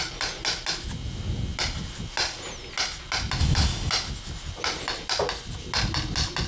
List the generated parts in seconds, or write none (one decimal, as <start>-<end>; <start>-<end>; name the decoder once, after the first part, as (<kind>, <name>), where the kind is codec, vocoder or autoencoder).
3.4-3.9 (codec, DAC)